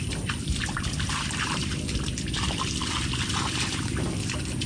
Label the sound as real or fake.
fake